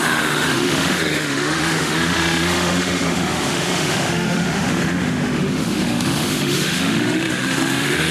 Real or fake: fake